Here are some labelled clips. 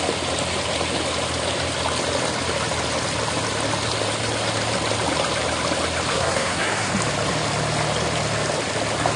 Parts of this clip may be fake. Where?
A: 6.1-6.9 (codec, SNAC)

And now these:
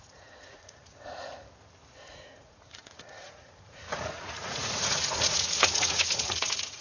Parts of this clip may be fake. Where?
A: 0.0-1.3 (vocoder, Vocos); 1.9-6.8

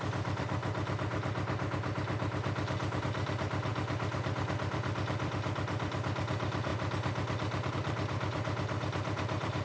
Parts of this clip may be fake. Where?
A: 0.0-0.6 (vocoder, BigVGAN v2); 3.0-3.7; 4.5-6.7; 7.7-9.6

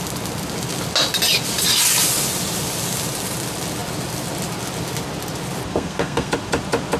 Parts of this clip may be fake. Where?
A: 5.7-6.3 (codec, SNAC)